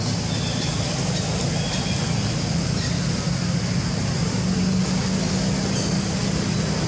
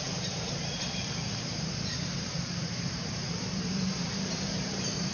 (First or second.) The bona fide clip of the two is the first